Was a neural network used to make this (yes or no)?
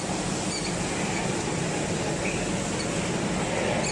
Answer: no